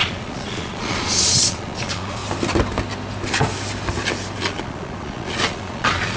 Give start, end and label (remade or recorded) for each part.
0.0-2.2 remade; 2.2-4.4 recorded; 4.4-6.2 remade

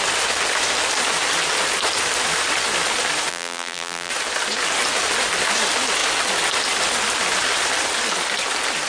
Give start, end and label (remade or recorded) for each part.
0.0-3.3 recorded; 3.3-4.1 remade; 4.1-8.9 recorded

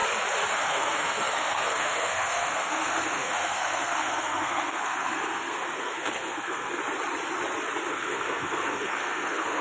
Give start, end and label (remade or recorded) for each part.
0.0-0.5 recorded; 0.5-6.8 remade; 6.8-7.9 recorded; 7.9-9.6 remade

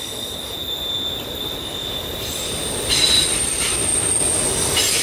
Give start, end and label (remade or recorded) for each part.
0.0-0.6 remade; 0.6-1.2 recorded; 1.2-3.9 remade; 3.9-4.6 recorded; 4.6-5.0 remade

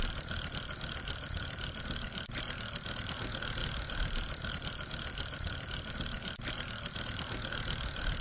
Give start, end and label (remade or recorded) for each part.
0.0-8.2 recorded

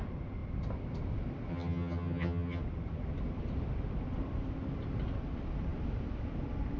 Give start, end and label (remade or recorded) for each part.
0.0-1.5 recorded; 1.5-2.6 remade; 2.6-6.8 recorded

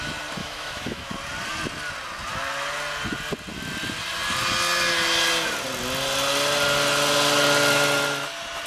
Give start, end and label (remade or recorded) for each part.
0.0-0.4 recorded; 0.4-1.1 remade; 1.1-8.7 recorded